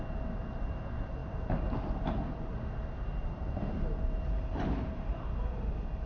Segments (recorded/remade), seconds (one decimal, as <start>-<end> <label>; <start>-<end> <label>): 0.0-6.1 remade